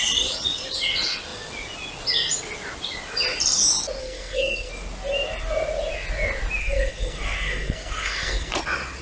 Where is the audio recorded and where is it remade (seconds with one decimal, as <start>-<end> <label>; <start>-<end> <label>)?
0.0-4.0 recorded; 4.0-4.7 remade; 4.7-6.6 recorded; 6.6-8.5 remade; 8.5-9.0 recorded